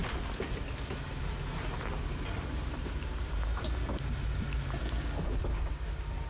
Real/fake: real